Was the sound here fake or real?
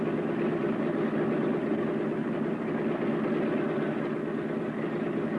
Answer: real